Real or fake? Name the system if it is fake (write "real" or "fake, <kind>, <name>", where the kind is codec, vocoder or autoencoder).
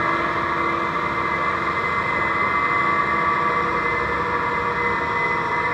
real